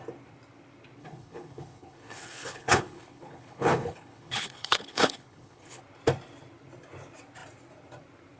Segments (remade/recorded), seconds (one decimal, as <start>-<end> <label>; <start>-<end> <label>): 0.0-1.0 recorded; 1.0-5.8 remade; 5.8-8.4 recorded